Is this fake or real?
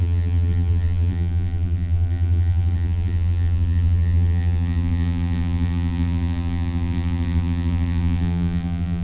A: fake